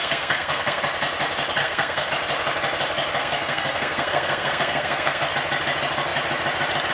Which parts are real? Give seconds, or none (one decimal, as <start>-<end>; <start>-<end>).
0.8-1.6; 2.1-3.2; 5.3-6.9